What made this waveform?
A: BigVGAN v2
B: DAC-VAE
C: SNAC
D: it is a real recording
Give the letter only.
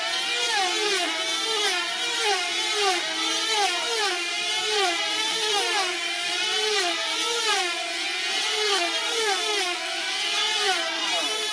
A